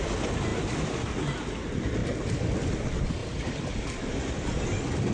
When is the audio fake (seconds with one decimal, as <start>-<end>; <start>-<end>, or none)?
2.0-2.8; 3.2-5.1